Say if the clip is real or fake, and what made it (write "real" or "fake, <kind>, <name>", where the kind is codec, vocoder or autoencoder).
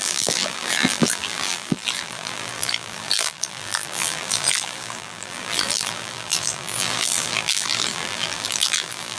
fake, vocoder, BigVGAN v2